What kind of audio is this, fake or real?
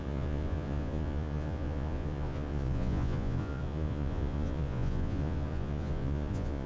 fake